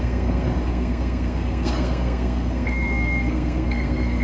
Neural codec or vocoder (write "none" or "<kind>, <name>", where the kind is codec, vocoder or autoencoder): codec, SNAC